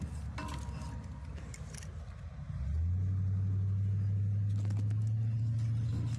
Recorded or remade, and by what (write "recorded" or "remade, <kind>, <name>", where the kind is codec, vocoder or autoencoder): recorded